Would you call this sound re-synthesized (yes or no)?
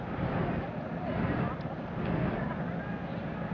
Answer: no